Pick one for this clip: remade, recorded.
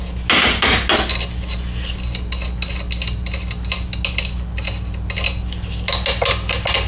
recorded